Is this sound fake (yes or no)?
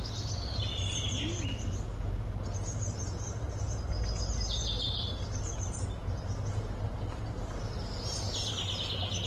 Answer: no